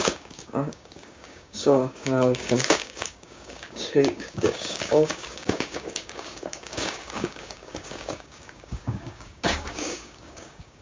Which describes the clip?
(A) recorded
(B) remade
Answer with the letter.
B